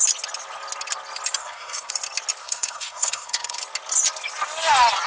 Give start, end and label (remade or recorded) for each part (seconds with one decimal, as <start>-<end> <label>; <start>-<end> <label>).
0.0-1.4 recorded; 1.4-1.9 remade; 1.9-2.4 recorded; 2.4-3.6 remade; 3.6-5.1 recorded